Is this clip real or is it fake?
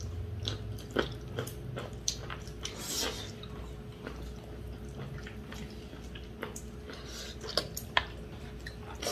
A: real